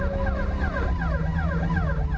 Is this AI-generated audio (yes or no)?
no